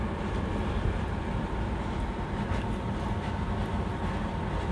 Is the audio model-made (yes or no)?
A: no